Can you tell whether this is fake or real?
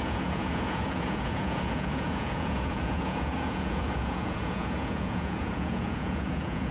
fake